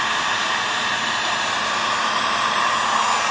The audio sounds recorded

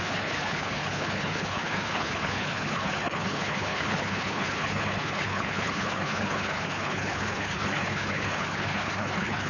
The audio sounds remade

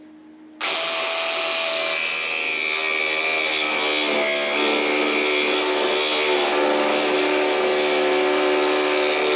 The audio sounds recorded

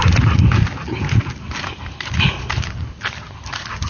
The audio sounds recorded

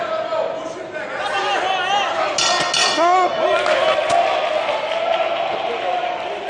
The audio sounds recorded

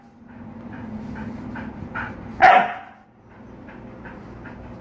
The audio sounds recorded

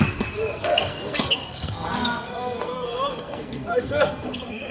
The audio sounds remade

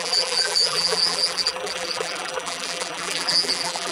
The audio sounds remade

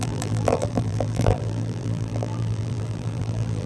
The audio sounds remade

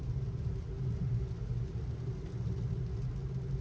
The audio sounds recorded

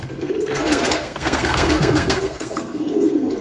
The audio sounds remade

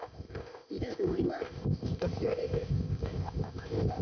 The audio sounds remade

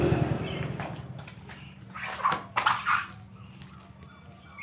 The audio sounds recorded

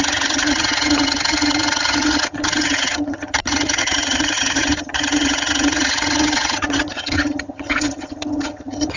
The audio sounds remade